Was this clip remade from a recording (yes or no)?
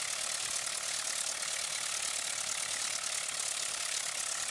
no